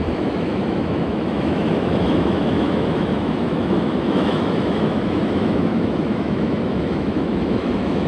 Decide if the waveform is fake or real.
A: fake